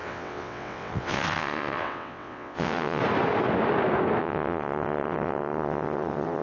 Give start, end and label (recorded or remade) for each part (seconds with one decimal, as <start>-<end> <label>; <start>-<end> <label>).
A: 0.0-3.0 remade; 3.0-4.2 recorded; 4.2-6.4 remade